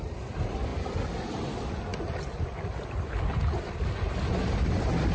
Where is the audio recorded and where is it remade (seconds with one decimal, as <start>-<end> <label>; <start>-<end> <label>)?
0.0-5.1 recorded